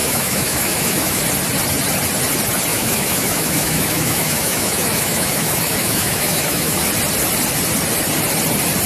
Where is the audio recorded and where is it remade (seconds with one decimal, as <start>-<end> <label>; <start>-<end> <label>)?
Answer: 0.0-1.2 remade; 1.2-2.7 recorded; 2.7-6.9 remade; 6.9-8.9 recorded